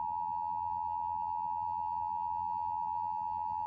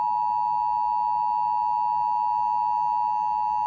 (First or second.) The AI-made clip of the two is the first